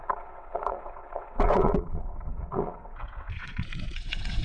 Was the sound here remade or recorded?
remade